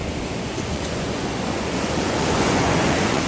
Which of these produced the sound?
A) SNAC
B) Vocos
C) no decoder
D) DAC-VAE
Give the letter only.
B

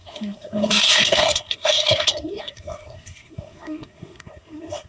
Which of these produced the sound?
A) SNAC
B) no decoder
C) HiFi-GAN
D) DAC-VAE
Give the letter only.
A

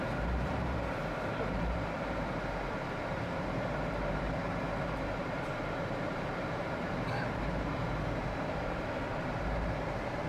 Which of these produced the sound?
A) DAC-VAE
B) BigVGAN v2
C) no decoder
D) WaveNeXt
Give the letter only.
B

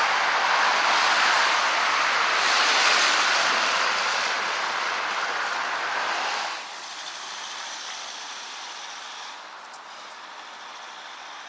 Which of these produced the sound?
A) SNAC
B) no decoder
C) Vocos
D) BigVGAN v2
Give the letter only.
B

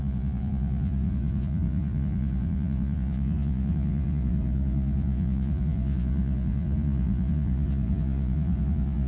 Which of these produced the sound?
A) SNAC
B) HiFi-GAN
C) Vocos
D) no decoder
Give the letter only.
C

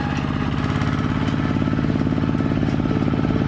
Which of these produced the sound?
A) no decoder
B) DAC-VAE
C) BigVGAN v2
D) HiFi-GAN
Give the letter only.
A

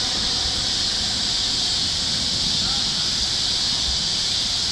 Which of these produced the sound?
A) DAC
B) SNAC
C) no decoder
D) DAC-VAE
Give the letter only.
C